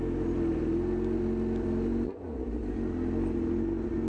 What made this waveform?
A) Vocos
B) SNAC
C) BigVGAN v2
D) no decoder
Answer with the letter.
D